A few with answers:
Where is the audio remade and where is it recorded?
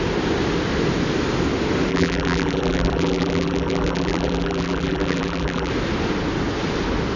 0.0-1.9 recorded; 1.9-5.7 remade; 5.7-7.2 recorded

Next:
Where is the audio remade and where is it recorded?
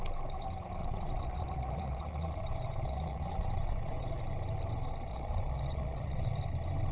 0.0-0.8 recorded; 0.8-4.2 remade; 4.2-5.1 recorded; 5.1-6.4 remade; 6.4-6.9 recorded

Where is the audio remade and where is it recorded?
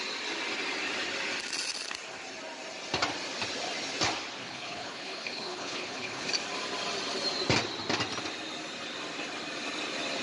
0.0-4.4 recorded; 4.4-6.3 remade; 6.3-10.2 recorded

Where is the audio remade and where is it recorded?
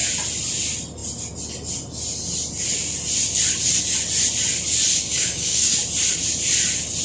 0.0-5.0 recorded; 5.0-5.7 remade; 5.7-7.0 recorded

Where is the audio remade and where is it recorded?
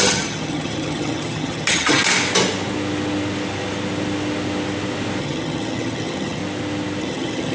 0.0-2.0 remade; 2.0-5.2 recorded; 5.2-6.4 remade; 6.4-7.0 recorded; 7.0-7.5 remade